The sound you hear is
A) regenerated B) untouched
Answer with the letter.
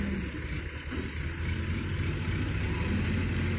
B